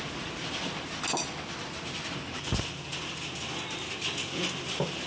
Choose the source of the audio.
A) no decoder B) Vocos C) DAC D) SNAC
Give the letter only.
A